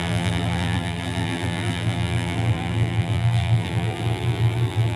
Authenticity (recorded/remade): remade